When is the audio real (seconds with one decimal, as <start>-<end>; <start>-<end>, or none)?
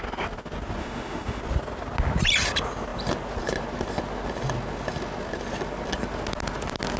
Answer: 0.0-0.8; 1.4-7.0